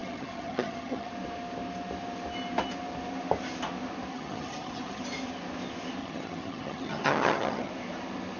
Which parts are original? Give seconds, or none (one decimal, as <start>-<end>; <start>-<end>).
1.1-4.1; 5.0-6.0; 7.7-8.4